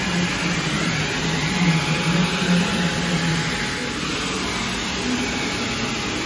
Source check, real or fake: real